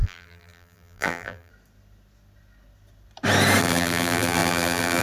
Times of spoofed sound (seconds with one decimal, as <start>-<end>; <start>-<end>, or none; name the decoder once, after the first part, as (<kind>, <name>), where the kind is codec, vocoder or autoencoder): 0.0-1.5 (vocoder, BigVGAN v2); 3.6-5.0